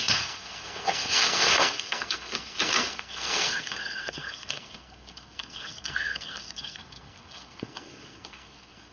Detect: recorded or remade remade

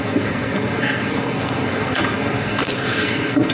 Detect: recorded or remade remade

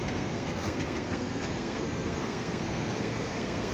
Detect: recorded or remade remade